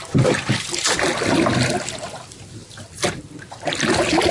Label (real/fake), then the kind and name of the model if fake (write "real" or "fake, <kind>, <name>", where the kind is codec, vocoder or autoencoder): real